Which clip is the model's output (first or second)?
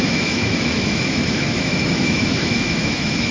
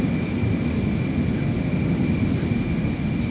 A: first